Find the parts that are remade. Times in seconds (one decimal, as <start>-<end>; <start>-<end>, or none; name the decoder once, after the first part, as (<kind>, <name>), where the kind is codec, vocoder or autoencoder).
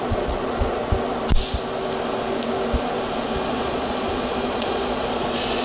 0.0-0.8 (vocoder, Vocos); 3.5-5.6